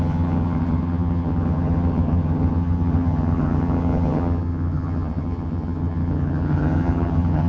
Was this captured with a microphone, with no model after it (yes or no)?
no